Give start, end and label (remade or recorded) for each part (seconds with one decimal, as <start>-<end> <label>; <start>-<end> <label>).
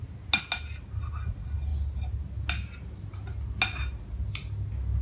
0.0-5.0 recorded